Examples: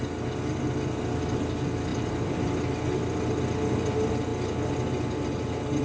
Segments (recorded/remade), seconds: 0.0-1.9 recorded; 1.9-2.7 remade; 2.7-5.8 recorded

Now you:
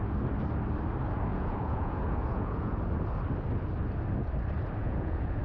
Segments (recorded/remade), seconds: 0.0-1.3 recorded; 1.3-2.8 remade; 2.8-4.8 recorded; 4.8-5.4 remade

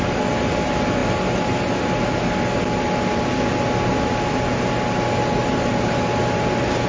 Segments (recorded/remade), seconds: 0.0-6.9 recorded

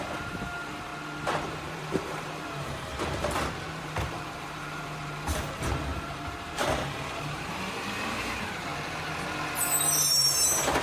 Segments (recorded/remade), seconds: 0.0-0.9 remade; 0.9-1.5 recorded; 1.5-2.9 remade; 2.9-3.8 recorded; 3.8-8.7 remade; 8.7-10.2 recorded; 10.2-10.8 remade

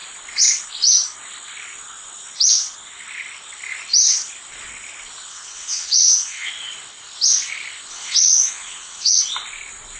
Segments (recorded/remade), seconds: 0.0-5.3 recorded; 5.3-6.5 remade; 6.5-7.9 recorded; 7.9-9.2 remade; 9.2-10.0 recorded

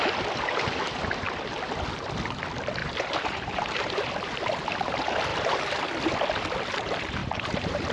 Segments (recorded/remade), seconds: 0.0-2.8 recorded; 2.8-3.9 remade; 3.9-5.3 recorded; 5.3-5.8 remade; 5.8-7.2 recorded; 7.2-7.9 remade

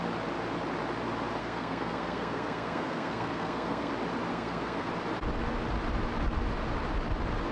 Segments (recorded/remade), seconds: 0.0-1.4 recorded; 1.4-3.9 remade; 3.9-4.3 recorded; 4.3-4.9 remade; 4.9-7.5 recorded

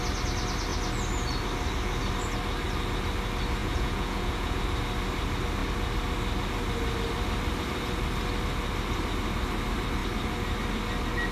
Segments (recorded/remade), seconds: 0.0-3.6 recorded; 3.6-4.6 remade; 4.6-11.3 recorded